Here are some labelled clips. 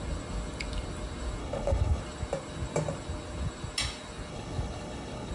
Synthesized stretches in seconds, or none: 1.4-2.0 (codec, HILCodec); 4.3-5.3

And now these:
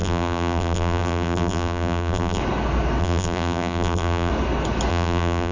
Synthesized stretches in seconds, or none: 0.0-2.4 (vocoder, BigVGAN v2); 3.0-4.3; 4.9-5.5

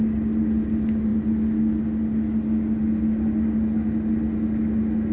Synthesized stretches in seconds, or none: none

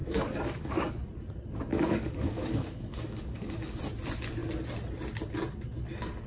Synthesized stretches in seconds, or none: 0.0-0.9 (codec, DAC); 1.7-3.8